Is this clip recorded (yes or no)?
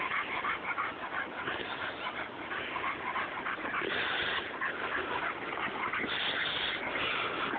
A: yes